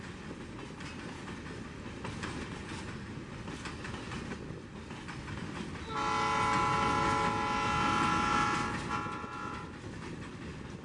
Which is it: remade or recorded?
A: recorded